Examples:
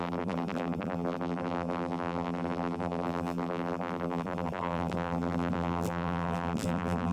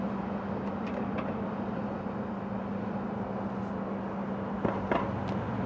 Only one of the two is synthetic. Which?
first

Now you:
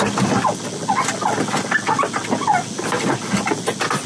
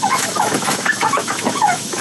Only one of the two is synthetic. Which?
second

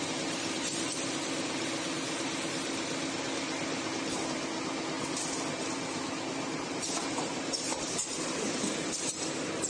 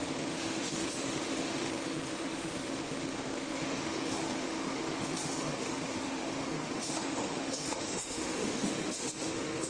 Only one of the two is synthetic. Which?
second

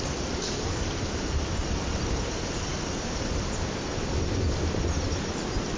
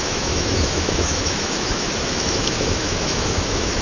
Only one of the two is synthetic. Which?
second